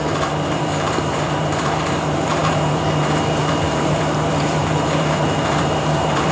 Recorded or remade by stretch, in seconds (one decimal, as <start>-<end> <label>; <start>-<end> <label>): 0.0-6.3 remade